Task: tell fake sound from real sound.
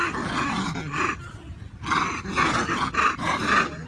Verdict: real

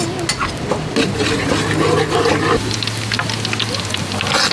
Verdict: real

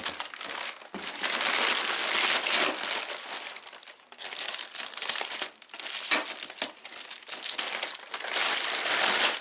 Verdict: real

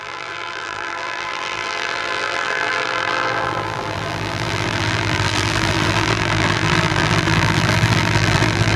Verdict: fake